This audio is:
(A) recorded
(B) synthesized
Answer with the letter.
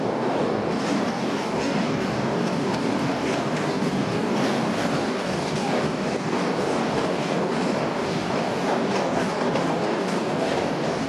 B